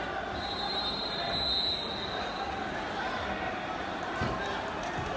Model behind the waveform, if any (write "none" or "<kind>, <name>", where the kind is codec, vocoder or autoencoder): none